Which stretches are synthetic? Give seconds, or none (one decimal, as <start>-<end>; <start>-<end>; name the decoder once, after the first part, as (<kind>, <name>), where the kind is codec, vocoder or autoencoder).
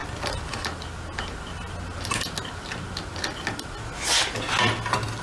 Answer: 0.0-0.5 (vocoder, BigVGAN v2)